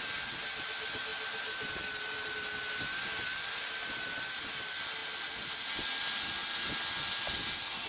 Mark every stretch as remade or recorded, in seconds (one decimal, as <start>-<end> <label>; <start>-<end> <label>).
0.0-7.9 recorded